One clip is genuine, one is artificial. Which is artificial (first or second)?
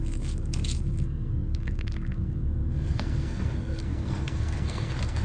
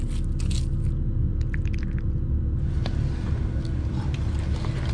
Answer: first